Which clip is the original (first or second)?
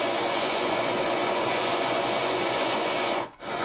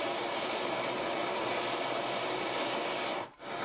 second